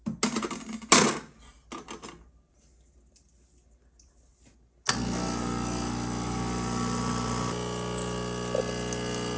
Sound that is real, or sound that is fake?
real